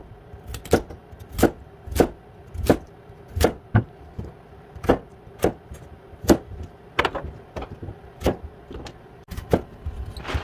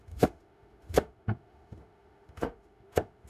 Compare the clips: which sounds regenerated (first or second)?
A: second